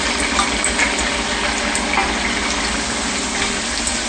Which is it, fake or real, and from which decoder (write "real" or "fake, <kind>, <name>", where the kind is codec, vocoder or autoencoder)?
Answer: real